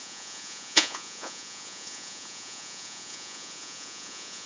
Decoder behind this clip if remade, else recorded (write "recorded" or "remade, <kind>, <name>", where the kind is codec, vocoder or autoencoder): remade, vocoder, Vocos